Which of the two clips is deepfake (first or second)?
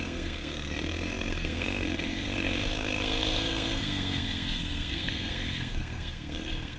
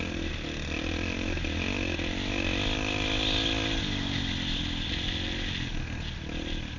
first